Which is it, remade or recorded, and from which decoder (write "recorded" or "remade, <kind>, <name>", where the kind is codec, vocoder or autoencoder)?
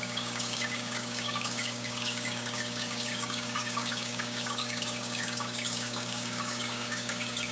remade, codec, DAC